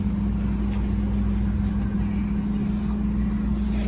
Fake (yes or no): no